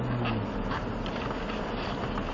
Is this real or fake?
real